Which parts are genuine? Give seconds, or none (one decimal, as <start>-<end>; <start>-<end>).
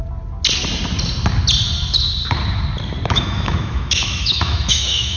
0.0-3.1